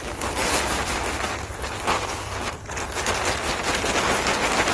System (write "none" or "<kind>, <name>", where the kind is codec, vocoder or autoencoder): none